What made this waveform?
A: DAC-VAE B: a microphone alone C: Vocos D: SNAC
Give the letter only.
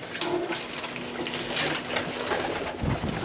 B